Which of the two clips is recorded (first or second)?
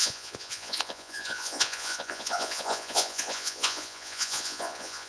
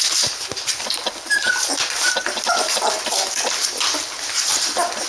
second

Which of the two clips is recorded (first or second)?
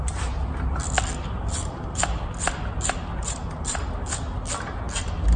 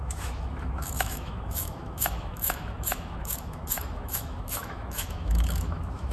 first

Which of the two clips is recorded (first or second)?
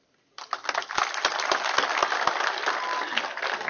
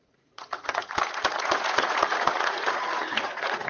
first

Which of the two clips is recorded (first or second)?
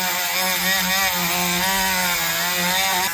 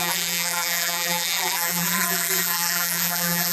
first